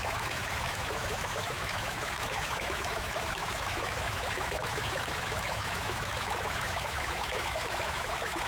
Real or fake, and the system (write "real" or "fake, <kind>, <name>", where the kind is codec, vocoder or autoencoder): fake, autoencoder, DAC-VAE